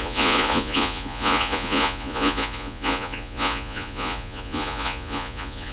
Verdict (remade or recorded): remade